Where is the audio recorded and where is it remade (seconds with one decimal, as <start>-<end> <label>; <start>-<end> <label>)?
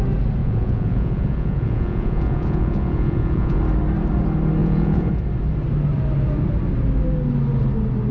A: 0.0-0.4 recorded; 0.4-3.6 remade; 3.6-4.6 recorded; 4.6-5.1 remade; 5.1-8.1 recorded